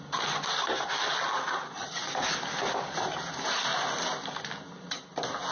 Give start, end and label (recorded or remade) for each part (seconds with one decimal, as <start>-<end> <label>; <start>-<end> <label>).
0.0-5.5 recorded